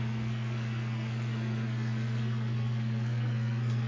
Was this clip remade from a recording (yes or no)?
yes